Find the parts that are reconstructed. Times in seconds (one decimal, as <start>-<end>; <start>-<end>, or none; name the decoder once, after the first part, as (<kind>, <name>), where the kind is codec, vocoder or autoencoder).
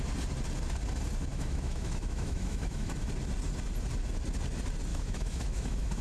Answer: 1.3-3.1 (autoencoder, DAC-VAE); 4.9-6.0